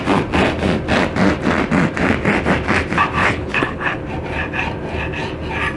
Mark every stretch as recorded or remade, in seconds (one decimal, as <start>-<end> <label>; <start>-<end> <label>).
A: 0.0-3.2 recorded; 3.2-4.0 remade; 4.0-5.8 recorded